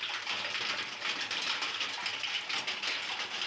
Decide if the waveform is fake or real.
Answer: real